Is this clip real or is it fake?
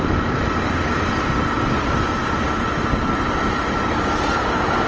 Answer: real